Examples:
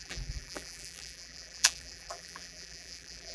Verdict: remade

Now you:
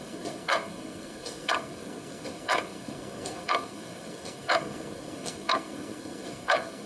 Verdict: remade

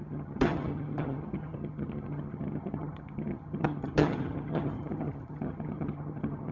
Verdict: remade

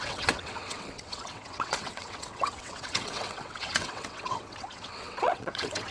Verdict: remade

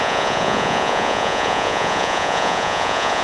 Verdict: remade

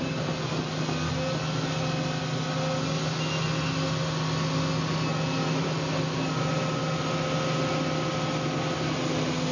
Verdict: recorded